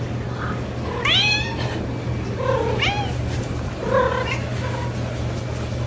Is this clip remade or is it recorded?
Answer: recorded